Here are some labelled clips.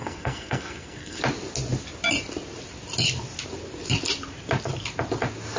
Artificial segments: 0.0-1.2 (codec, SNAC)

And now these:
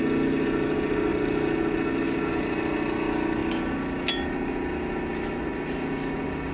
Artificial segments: none